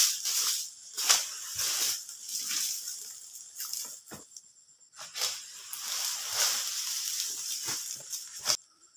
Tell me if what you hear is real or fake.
real